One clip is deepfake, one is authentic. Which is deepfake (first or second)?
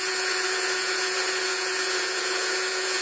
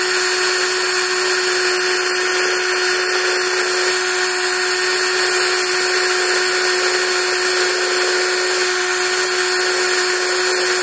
first